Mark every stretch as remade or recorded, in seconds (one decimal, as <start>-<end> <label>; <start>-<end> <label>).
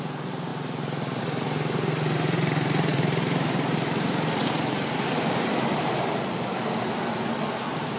0.0-2.9 recorded; 2.9-6.3 remade; 6.3-8.0 recorded